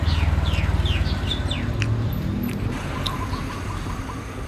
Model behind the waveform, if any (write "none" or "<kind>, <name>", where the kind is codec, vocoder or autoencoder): none